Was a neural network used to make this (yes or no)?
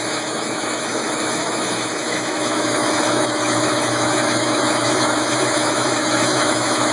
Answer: yes